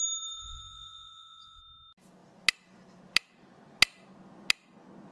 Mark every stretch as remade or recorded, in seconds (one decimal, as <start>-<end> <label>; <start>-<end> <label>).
0.0-0.4 recorded; 0.4-1.6 remade; 1.6-5.1 recorded